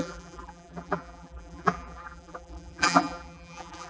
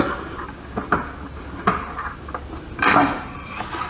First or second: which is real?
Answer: second